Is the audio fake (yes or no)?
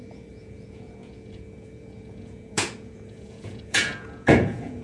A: yes